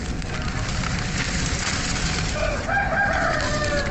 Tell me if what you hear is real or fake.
real